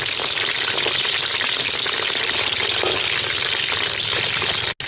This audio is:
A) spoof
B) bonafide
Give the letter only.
B